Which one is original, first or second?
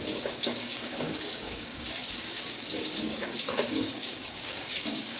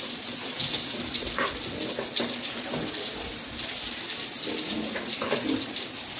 second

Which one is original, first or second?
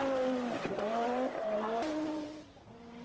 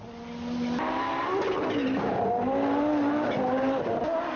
second